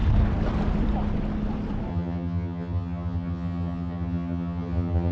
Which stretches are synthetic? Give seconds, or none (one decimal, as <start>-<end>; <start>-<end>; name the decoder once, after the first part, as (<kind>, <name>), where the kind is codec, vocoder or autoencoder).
1.9-5.1 (vocoder, HiFi-GAN)